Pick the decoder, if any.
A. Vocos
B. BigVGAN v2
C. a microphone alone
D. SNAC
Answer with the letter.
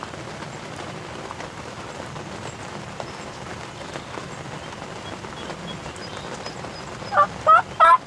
C